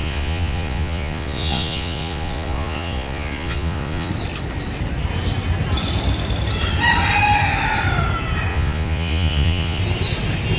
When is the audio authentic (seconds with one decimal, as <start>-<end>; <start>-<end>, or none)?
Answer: 4.1-8.5; 9.8-10.6